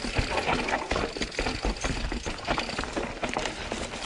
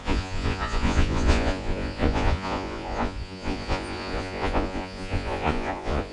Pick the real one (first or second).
first